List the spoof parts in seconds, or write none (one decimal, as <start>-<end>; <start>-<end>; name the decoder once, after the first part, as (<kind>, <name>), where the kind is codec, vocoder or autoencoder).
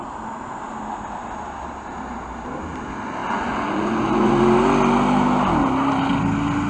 3.2-4.4 (vocoder, Vocos)